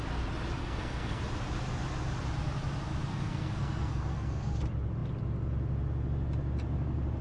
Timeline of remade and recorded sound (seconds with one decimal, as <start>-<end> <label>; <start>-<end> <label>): 0.0-0.6 recorded; 0.6-1.2 remade; 1.2-3.1 recorded; 3.1-4.5 remade; 4.5-7.2 recorded